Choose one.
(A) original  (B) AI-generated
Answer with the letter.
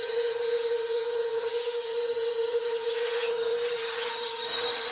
B